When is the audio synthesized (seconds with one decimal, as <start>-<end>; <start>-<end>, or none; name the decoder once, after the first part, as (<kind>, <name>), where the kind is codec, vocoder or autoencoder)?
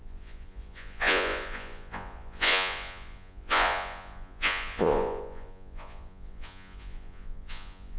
0.0-8.0 (vocoder, Vocos)